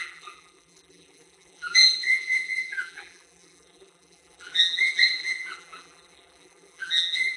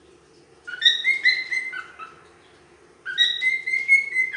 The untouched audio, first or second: second